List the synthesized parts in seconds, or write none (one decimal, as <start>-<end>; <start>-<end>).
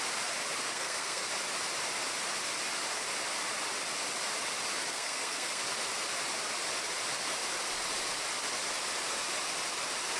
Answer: 0.7-1.3; 4.9-5.6